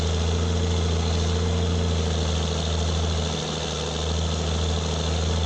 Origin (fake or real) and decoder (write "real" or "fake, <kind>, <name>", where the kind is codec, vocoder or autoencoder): real